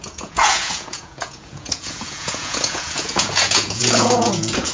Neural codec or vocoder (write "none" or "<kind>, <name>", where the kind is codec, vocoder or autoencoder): vocoder, Vocos